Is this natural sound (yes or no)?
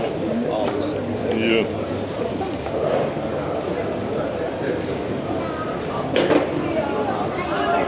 yes